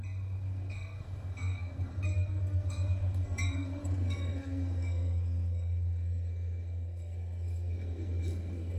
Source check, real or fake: fake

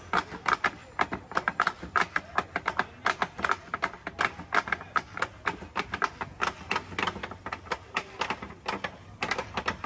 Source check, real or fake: real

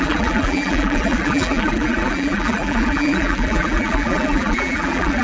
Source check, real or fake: fake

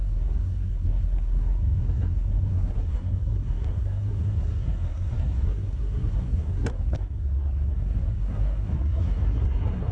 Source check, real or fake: fake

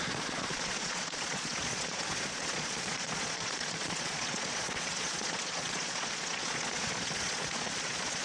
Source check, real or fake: fake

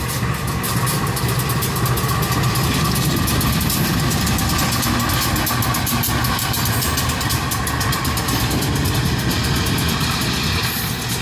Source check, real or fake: real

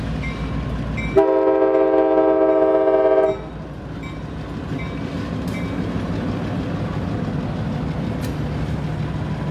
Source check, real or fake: real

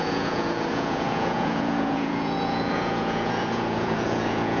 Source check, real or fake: fake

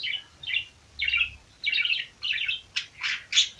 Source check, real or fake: real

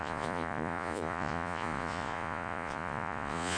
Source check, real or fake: fake